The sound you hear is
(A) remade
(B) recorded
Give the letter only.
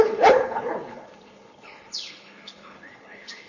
A